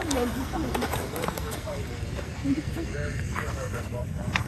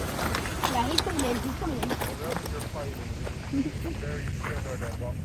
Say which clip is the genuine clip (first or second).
second